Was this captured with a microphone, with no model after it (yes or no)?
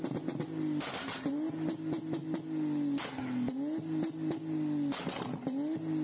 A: yes